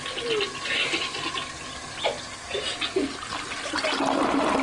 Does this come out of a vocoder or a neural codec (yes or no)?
no